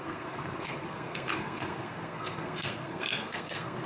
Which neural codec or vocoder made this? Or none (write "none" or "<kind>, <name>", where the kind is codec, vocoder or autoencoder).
codec, SNAC